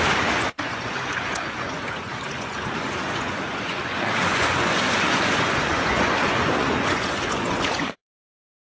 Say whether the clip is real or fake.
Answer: fake